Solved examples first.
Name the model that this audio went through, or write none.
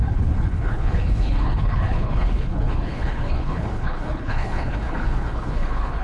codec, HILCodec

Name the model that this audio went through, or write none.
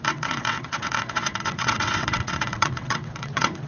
vocoder, WaveNeXt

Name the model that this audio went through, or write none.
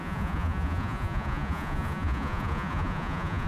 vocoder, Vocos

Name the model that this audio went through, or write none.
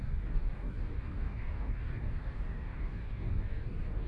codec, DAC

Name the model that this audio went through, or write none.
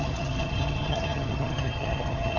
vocoder, HiFi-GAN